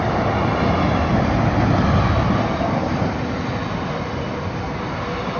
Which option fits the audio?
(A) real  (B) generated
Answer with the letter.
A